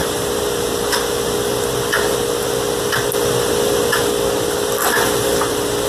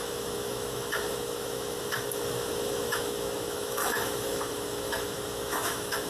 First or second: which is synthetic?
second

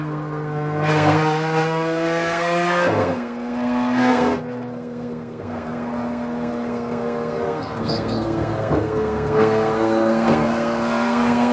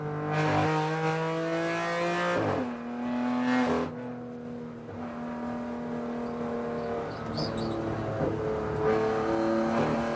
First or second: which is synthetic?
first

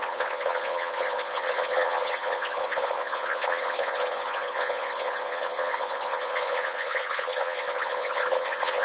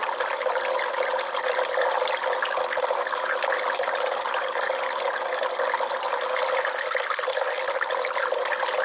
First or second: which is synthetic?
first